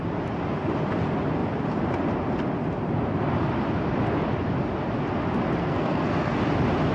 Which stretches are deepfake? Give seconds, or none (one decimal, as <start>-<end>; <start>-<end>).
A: 5.6-6.4